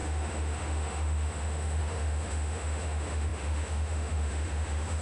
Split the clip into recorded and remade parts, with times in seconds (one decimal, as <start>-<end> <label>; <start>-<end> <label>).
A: 0.0-5.0 remade